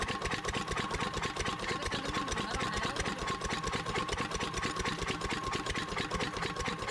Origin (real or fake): real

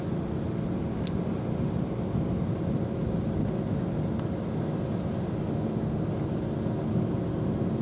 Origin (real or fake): real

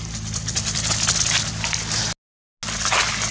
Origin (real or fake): real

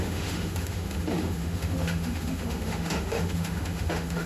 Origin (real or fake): fake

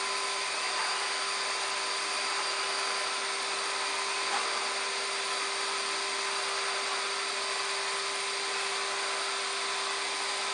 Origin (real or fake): real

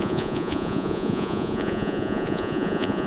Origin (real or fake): fake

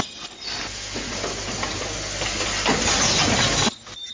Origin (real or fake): real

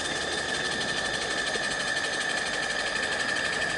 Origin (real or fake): real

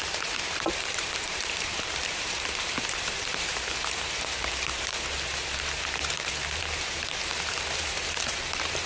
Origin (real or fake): fake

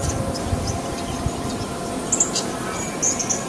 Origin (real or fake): real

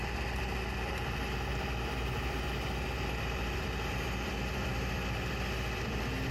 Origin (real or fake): fake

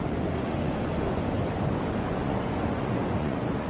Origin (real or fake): fake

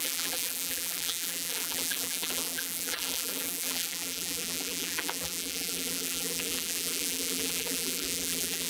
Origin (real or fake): fake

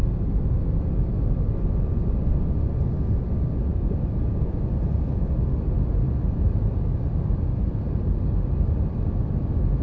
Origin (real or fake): real